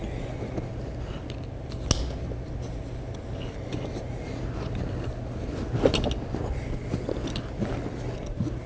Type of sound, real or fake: real